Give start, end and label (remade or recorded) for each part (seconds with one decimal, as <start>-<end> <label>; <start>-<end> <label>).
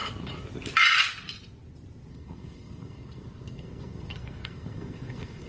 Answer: 0.0-2.1 recorded; 2.1-5.5 remade